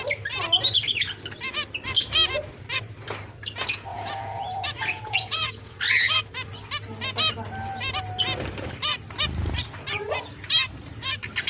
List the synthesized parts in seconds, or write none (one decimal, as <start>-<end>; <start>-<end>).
3.9-6.2